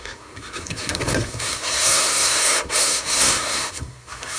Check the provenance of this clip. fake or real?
fake